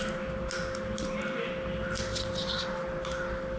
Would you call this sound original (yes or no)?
yes